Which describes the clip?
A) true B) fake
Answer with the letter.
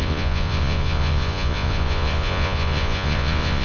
B